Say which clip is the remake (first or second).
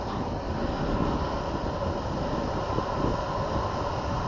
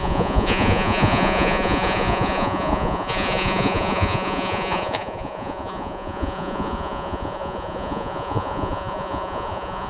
second